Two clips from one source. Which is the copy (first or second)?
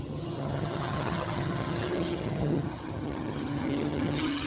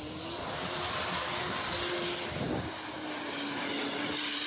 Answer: first